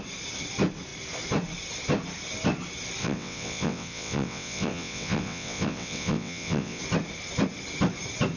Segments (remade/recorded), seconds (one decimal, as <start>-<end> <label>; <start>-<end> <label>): 0.0-3.0 recorded; 3.0-6.8 remade; 6.8-8.4 recorded